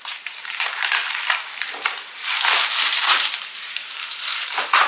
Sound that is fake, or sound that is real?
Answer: fake